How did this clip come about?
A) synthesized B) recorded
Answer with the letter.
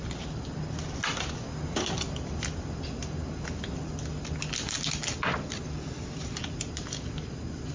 B